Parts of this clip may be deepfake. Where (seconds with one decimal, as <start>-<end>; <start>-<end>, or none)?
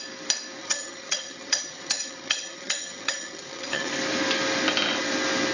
0.6-3.9